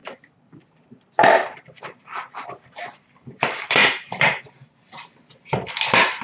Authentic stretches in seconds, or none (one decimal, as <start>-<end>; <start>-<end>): none